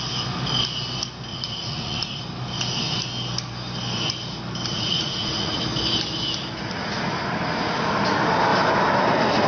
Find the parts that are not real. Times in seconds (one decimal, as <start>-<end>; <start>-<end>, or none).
1.3-2.2; 4.7-5.6